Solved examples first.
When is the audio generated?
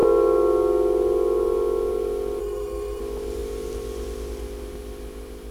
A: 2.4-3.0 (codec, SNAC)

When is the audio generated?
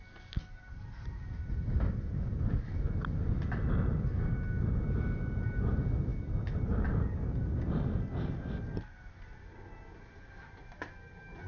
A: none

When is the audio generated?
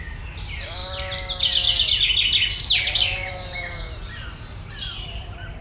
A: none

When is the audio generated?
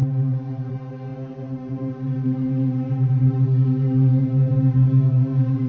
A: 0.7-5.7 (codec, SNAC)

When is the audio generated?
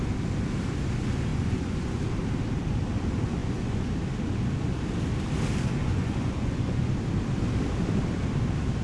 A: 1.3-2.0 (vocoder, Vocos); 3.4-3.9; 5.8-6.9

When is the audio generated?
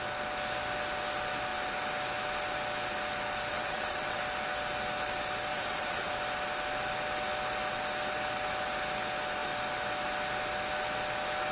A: 3.5-4.2 (vocoder, WaveNeXt); 5.5-6.1